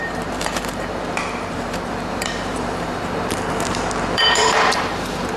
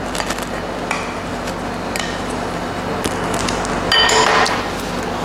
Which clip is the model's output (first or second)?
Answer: first